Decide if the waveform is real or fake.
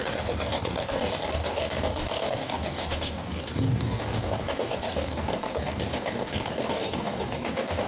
fake